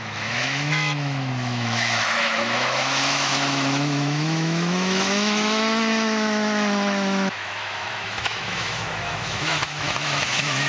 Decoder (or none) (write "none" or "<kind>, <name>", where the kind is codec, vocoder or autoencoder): autoencoder, DAC-VAE